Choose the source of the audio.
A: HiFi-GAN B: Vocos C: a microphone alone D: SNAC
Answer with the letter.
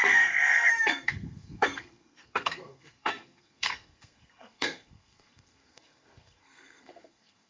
D